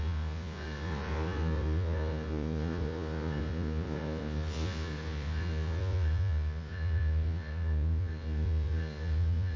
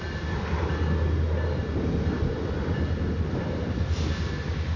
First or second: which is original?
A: second